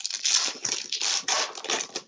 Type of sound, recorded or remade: recorded